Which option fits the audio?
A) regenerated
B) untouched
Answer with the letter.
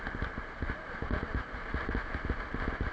B